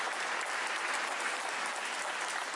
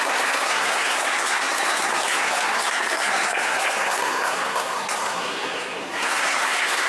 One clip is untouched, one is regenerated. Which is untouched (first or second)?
first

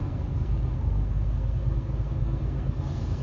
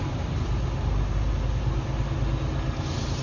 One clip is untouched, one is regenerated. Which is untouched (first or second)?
second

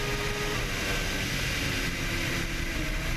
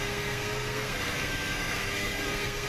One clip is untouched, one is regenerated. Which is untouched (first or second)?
first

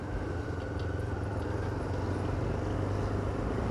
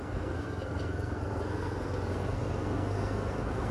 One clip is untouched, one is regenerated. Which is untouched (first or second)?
first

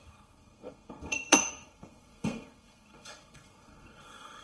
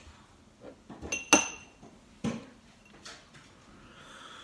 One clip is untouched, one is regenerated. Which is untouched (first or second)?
second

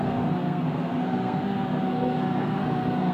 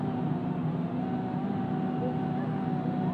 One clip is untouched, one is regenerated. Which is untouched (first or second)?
second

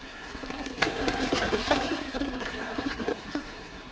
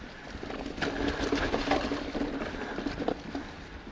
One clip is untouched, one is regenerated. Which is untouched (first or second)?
second